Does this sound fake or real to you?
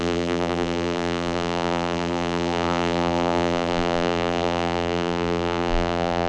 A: fake